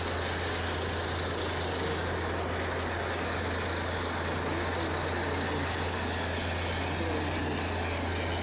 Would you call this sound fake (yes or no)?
no